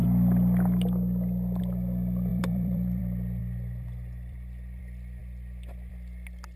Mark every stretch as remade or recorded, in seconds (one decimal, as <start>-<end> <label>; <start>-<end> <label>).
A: 0.0-2.3 recorded; 2.3-3.0 remade; 3.0-3.4 recorded; 3.4-4.8 remade; 4.8-5.2 recorded; 5.2-5.9 remade; 5.9-6.6 recorded